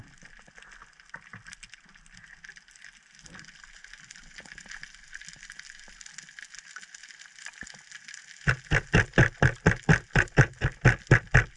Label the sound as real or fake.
real